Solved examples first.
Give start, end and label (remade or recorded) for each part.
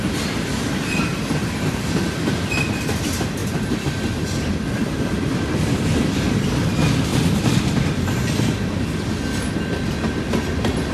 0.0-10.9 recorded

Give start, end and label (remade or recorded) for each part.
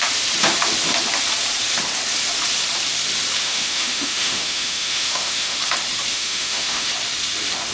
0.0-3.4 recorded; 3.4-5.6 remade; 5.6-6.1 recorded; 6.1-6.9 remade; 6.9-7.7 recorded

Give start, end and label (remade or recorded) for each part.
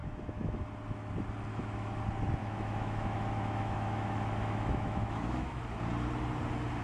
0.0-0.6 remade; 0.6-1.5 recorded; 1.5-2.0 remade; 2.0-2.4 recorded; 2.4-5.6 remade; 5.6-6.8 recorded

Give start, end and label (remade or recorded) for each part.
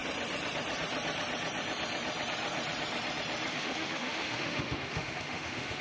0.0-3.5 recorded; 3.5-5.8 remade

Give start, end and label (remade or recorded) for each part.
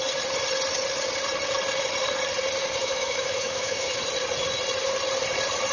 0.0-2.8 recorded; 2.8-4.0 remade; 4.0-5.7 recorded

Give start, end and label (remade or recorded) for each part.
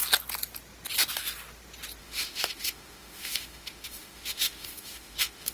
0.0-2.0 recorded; 2.0-5.5 remade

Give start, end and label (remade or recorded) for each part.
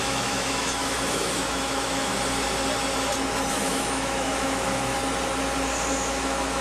0.0-2.1 remade; 2.1-3.5 recorded; 3.5-5.0 remade; 5.0-5.9 recorded; 5.9-6.6 remade